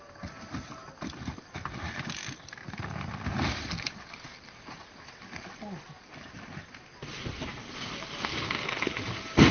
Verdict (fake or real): real